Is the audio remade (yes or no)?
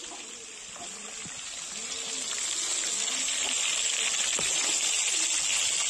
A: no